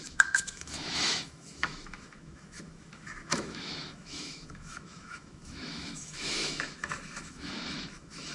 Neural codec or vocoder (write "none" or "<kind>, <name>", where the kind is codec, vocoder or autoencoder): autoencoder, DAC-VAE